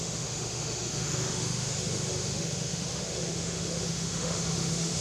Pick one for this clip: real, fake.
fake